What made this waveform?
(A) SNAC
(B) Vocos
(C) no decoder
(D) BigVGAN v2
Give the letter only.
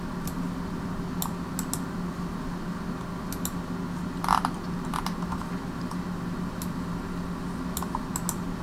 C